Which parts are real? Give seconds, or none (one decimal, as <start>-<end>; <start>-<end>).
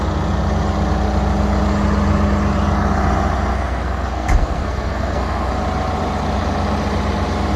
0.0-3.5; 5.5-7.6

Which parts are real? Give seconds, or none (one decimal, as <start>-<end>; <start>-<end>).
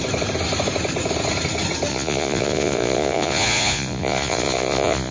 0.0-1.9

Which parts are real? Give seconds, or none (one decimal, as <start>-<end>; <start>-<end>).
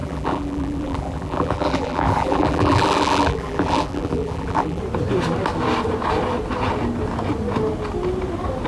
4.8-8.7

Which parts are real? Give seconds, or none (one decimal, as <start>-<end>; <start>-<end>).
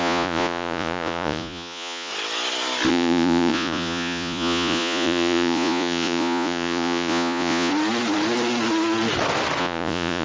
2.1-2.9; 7.7-9.6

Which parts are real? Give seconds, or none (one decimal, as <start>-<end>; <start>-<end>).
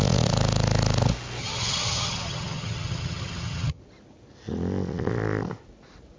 0.0-1.4; 3.8-6.2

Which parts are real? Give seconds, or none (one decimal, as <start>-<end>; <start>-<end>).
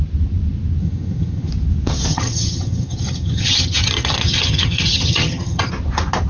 0.0-0.8; 1.5-2.1; 5.7-6.3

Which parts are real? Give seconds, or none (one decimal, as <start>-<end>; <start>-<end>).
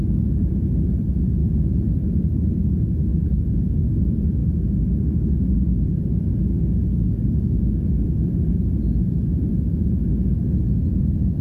1.4-2.1; 9.5-11.0